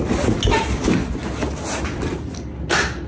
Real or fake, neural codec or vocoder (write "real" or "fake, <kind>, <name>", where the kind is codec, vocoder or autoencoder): real